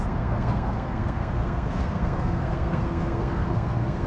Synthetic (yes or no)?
yes